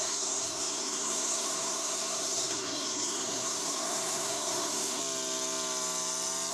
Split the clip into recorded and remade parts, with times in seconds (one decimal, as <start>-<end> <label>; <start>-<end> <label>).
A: 0.0-5.0 remade; 5.0-6.5 recorded